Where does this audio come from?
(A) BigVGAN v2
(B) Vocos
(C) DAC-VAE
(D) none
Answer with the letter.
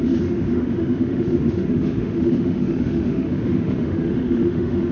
C